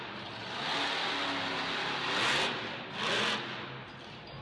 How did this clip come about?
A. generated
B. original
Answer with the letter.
B